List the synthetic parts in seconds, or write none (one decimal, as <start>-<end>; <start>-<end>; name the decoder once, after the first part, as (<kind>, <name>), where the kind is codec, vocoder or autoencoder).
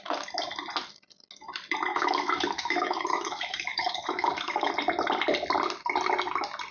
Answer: 1.9-4.7 (autoencoder, DAC-VAE)